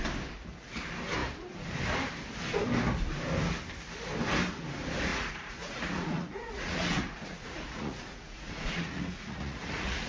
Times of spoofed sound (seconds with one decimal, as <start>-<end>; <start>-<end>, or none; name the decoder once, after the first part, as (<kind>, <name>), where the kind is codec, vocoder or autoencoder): 5.1-10.1 (vocoder, Vocos)